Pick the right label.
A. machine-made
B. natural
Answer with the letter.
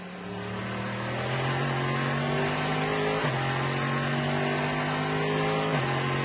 B